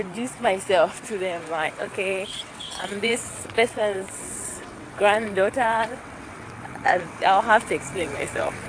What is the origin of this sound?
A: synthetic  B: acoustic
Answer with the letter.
A